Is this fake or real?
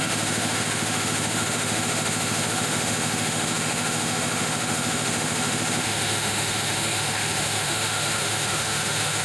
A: fake